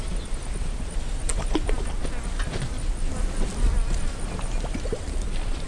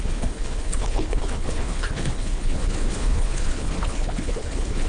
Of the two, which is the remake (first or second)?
second